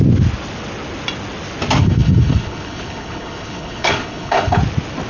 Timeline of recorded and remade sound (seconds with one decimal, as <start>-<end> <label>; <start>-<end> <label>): 0.0-1.8 recorded; 1.8-4.6 remade; 4.6-5.1 recorded